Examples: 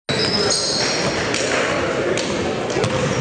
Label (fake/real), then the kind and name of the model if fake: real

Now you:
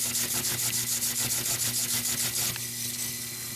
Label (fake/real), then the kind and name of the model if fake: real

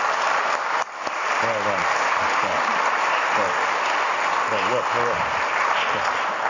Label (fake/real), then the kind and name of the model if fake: real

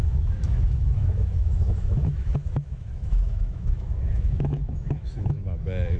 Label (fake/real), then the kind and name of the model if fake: fake, autoencoder, DAC-VAE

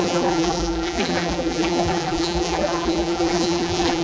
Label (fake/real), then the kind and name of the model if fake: fake, vocoder, BigVGAN v2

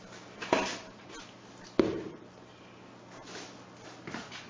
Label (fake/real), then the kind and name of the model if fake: real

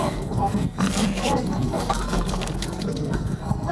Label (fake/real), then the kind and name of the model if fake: fake, codec, SNAC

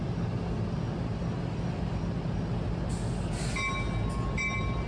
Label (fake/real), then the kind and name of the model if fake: real